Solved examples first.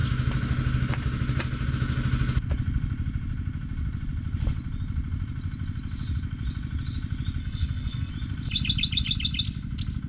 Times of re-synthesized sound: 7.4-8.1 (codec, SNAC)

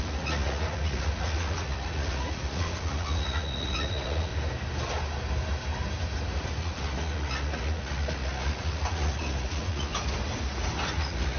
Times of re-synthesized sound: 0.0-4.3 (vocoder, Vocos); 6.6-9.9; 10.9-11.4

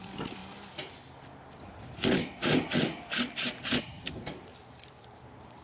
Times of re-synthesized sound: 0.0-0.4 (vocoder, BigVGAN v2); 3.8-5.6

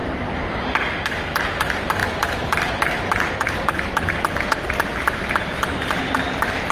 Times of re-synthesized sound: none

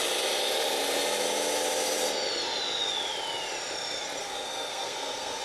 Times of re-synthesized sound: 4.2-5.4 (codec, SNAC)

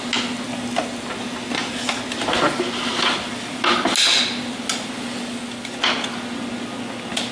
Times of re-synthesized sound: none

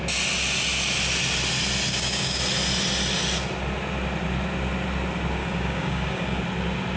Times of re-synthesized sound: 1.9-2.4 (codec, DAC); 5.4-6.4

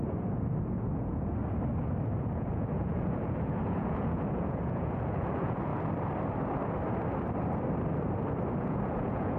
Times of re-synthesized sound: 0.0-1.4 (vocoder, Vocos); 2.2-5.7; 8.6-9.4